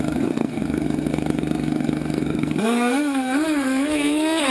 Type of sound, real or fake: fake